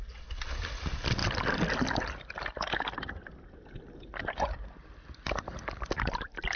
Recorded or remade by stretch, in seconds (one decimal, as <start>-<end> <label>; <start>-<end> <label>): 0.0-6.6 recorded